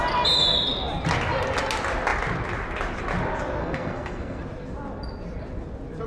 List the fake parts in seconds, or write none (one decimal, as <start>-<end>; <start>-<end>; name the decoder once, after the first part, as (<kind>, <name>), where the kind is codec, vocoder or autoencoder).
3.6-4.4 (codec, SNAC)